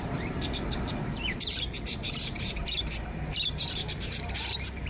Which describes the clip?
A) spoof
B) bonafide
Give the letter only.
A